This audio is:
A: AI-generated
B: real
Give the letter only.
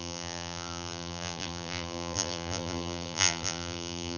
A